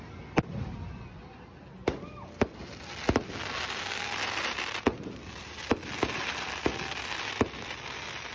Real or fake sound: real